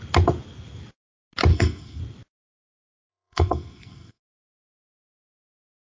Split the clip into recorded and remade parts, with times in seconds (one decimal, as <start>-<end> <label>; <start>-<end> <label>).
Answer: 0.0-1.5 recorded; 1.5-2.0 remade; 2.0-3.1 recorded; 3.1-4.9 remade; 4.9-5.8 recorded

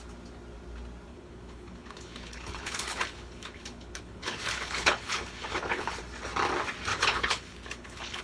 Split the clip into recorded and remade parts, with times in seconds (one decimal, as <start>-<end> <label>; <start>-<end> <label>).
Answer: 0.0-1.1 recorded; 1.1-6.0 remade; 6.0-6.9 recorded; 6.9-8.2 remade

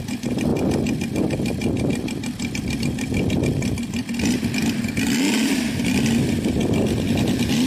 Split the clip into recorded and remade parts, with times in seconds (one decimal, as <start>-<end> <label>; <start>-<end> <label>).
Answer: 0.0-7.7 recorded

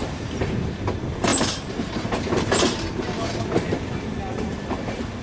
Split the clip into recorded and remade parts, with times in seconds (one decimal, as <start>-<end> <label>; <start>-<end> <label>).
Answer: 0.0-0.6 remade; 0.6-1.3 recorded; 1.3-2.9 remade; 2.9-5.2 recorded

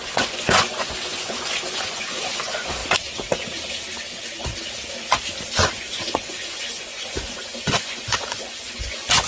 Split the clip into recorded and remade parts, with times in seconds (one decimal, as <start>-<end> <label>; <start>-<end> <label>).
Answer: 0.0-2.8 remade; 2.8-5.5 recorded; 5.5-9.3 remade

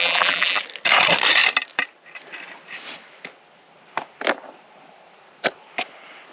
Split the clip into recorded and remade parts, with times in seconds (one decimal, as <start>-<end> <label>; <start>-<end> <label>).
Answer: 0.0-0.6 remade; 0.6-6.3 recorded

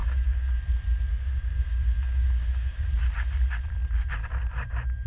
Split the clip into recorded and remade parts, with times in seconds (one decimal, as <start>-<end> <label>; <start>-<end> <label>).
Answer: 0.0-0.6 remade; 0.6-1.1 recorded; 1.1-2.8 remade; 2.8-5.1 recorded